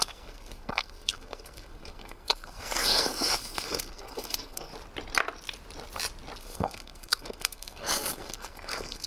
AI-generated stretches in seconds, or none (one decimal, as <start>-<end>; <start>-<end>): 0.0-4.7; 6.4-9.1